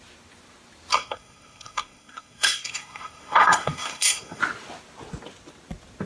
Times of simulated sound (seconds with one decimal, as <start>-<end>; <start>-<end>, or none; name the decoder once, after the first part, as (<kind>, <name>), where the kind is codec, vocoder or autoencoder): 0.9-4.4 (codec, SNAC)